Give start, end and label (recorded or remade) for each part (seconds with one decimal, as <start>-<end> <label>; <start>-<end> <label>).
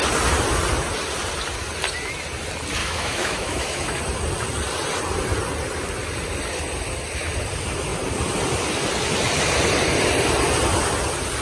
0.0-2.8 recorded; 2.8-4.0 remade; 4.0-11.4 recorded